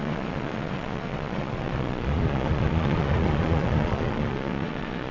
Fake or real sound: fake